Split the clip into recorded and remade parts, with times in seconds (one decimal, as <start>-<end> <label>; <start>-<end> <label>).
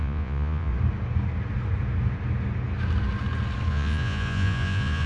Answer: 0.0-0.7 remade; 0.7-3.7 recorded; 3.7-5.1 remade